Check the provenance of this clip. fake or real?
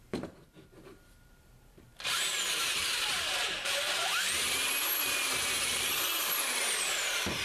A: fake